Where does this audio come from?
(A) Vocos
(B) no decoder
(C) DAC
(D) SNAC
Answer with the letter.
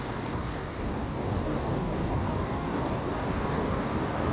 C